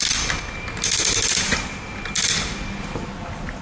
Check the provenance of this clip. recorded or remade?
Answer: remade